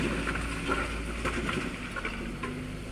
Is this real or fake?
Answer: real